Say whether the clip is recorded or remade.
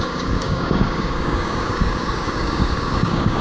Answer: remade